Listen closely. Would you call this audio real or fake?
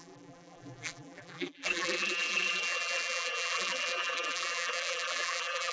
fake